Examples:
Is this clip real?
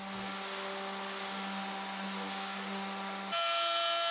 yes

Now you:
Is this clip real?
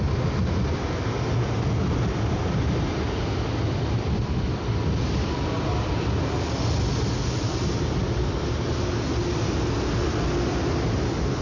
yes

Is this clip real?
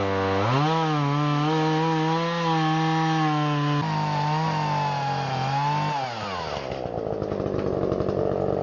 yes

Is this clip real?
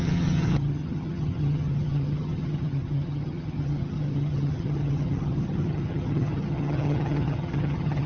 no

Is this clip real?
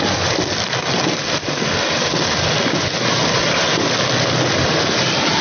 yes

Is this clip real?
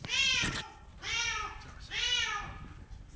yes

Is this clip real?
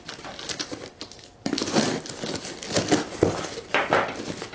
yes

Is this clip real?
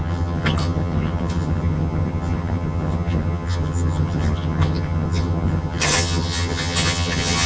no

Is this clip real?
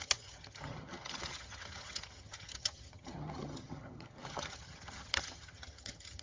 no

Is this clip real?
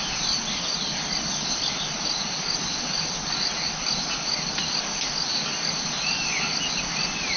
yes